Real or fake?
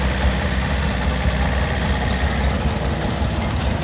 real